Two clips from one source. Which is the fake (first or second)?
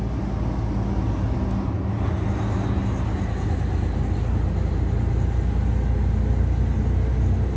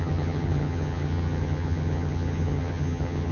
second